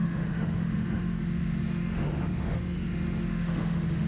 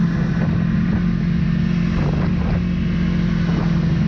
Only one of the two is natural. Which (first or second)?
second